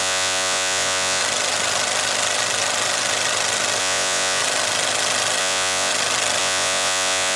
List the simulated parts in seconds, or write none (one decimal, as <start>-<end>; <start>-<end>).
0.0-1.2; 3.8-4.4; 5.4-5.9; 6.4-7.4